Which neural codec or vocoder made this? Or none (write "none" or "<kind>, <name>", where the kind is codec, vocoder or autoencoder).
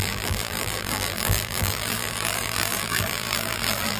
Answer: vocoder, BigVGAN v2